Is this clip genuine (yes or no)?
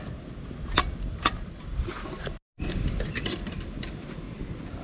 yes